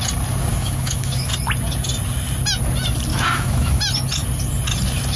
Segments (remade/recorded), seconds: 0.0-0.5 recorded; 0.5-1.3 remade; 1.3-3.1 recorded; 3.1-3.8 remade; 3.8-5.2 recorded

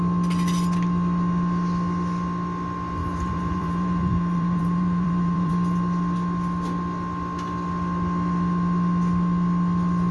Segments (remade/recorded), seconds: 0.0-3.0 recorded; 3.0-5.5 remade; 5.5-10.1 recorded

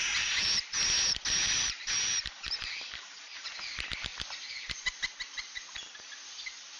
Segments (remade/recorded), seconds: 0.0-1.4 recorded; 1.4-3.5 remade; 3.5-6.8 recorded

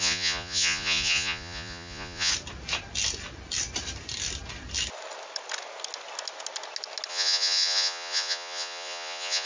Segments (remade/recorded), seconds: 0.0-2.3 remade; 2.3-7.1 recorded; 7.1-9.5 remade

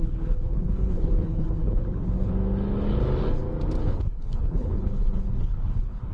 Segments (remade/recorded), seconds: 0.0-2.3 remade; 2.3-3.8 recorded; 3.8-6.1 remade

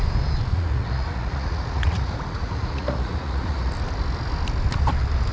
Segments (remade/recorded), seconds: 0.0-0.5 recorded; 0.5-3.7 remade; 3.7-5.3 recorded